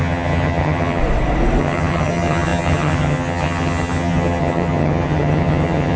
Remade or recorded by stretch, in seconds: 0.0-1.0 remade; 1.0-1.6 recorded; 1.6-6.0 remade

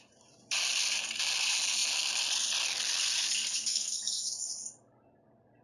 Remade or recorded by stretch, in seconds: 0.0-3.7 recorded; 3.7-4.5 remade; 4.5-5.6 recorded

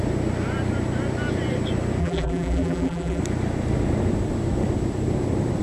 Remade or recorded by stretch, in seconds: 0.0-2.0 recorded; 2.0-3.2 remade; 3.2-5.6 recorded

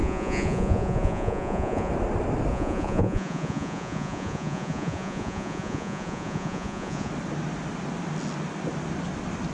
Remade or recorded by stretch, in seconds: 0.0-1.9 remade; 1.9-2.5 recorded; 2.5-7.1 remade; 7.1-9.5 recorded

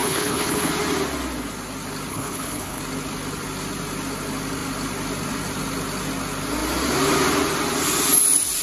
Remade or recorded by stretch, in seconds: 0.0-0.7 remade; 0.7-2.1 recorded; 2.1-2.8 remade; 2.8-8.6 recorded